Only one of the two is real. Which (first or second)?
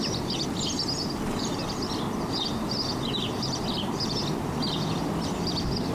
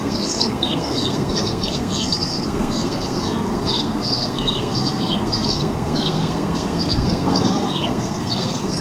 first